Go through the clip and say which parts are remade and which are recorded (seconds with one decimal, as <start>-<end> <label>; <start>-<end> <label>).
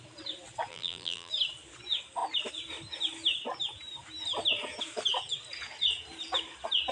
0.0-0.7 recorded; 0.7-1.3 remade; 1.3-6.9 recorded